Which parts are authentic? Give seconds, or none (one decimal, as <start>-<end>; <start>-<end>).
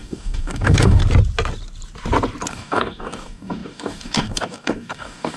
1.0-2.5